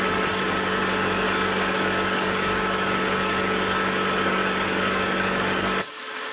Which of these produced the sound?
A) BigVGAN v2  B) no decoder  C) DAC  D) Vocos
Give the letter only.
C